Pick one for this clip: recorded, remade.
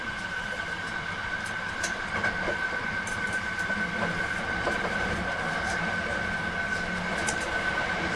remade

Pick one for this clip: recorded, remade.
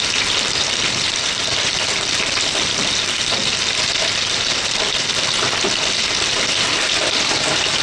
remade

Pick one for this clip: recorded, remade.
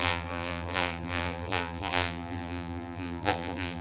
remade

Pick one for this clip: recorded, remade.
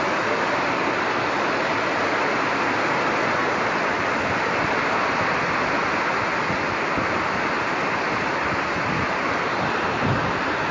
recorded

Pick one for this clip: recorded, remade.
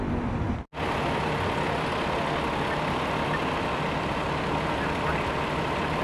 recorded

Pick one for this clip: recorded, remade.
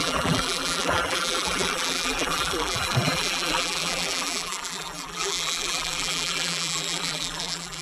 remade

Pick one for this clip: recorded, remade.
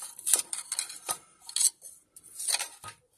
recorded